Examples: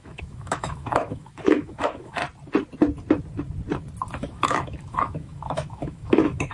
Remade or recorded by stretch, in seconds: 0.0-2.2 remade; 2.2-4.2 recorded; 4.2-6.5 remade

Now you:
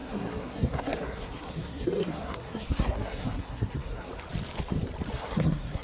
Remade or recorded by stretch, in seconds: 0.0-4.1 remade; 4.1-5.1 recorded; 5.1-5.8 remade

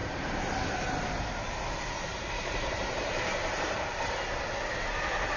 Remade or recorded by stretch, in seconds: 0.0-0.6 remade; 0.6-2.1 recorded; 2.1-3.8 remade; 3.8-5.4 recorded

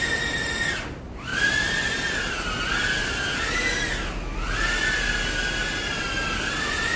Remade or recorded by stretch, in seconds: 0.0-7.0 recorded

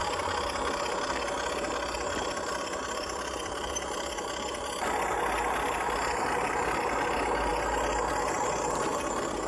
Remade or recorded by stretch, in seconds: 0.0-9.5 recorded

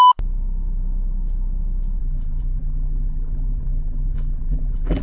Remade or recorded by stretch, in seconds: 0.0-2.0 recorded; 2.0-5.0 remade

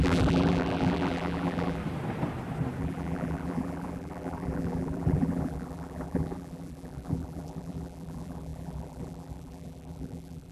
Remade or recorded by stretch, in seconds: 0.0-1.8 remade; 1.8-2.8 recorded; 2.8-10.5 remade